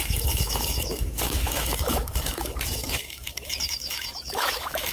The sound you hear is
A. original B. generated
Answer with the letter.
B